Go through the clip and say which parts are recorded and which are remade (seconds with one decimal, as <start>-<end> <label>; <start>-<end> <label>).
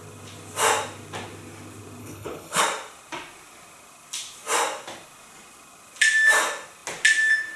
0.0-2.0 recorded; 2.0-2.6 remade; 2.6-7.6 recorded